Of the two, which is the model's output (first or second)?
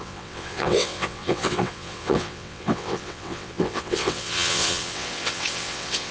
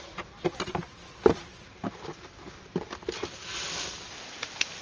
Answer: first